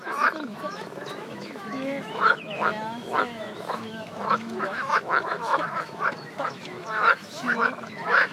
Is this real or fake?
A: fake